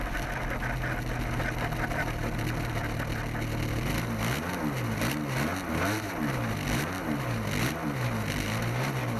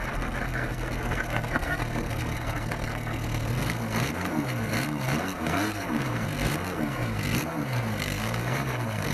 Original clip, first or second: first